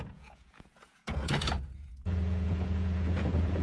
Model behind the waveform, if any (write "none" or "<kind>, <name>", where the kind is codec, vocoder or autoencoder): vocoder, Vocos